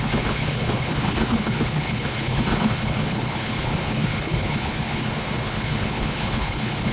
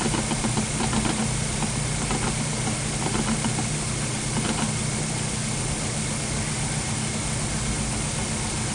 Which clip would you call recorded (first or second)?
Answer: second